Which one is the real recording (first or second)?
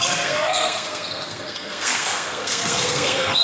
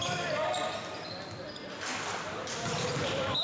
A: second